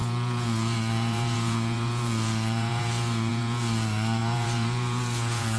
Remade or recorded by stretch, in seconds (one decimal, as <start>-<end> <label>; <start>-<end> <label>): 0.0-5.6 remade